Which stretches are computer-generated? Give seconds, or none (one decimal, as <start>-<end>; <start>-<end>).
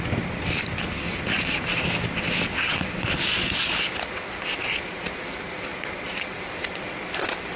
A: none